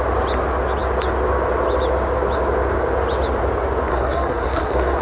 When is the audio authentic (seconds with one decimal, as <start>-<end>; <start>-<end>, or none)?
0.0-3.9

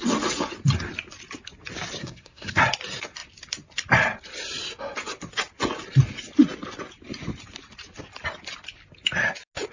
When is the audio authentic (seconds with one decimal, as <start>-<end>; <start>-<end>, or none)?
0.0-2.0; 2.6-9.7

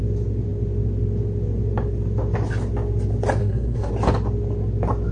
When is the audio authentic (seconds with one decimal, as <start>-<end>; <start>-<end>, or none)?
0.0-3.4; 3.9-5.1

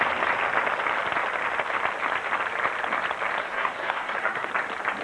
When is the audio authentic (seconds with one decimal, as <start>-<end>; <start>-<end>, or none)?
0.0-3.4; 4.5-5.0

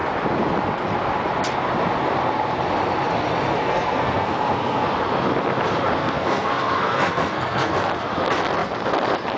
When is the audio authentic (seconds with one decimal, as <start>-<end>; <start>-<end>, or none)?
0.0-3.5; 4.9-6.0; 7.7-9.4

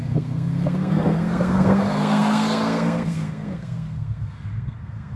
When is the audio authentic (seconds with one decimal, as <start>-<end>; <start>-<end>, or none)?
none

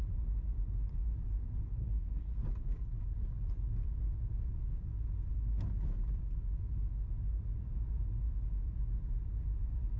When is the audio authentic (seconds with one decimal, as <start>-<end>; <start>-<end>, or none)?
0.0-1.8; 2.4-10.0